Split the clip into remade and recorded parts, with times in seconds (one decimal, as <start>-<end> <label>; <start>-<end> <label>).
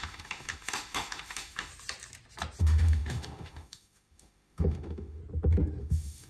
0.0-1.7 remade; 1.7-2.6 recorded; 2.6-5.2 remade; 5.2-5.8 recorded; 5.8-6.3 remade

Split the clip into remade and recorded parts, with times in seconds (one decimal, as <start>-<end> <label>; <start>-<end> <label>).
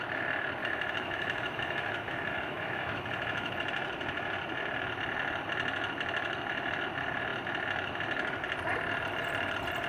0.0-0.6 recorded; 0.6-3.5 remade; 3.5-9.9 recorded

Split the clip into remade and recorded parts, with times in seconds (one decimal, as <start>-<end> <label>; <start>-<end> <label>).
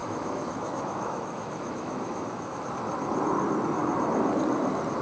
0.0-2.6 remade; 2.6-5.0 recorded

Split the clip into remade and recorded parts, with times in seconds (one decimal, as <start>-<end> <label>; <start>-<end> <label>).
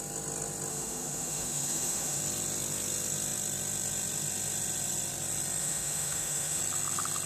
0.0-0.7 recorded; 0.7-2.2 remade; 2.2-5.6 recorded; 5.6-6.6 remade; 6.6-7.3 recorded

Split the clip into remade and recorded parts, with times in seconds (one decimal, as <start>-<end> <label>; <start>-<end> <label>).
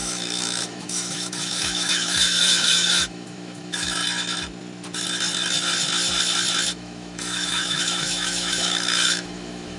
0.0-4.0 remade; 4.0-6.7 recorded; 6.7-9.8 remade